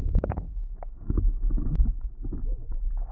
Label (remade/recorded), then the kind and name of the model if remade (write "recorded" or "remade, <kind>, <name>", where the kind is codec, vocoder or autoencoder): recorded